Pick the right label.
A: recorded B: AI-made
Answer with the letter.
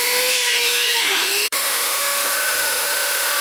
B